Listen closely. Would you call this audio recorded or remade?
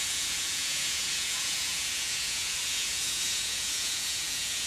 remade